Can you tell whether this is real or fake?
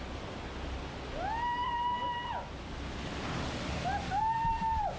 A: real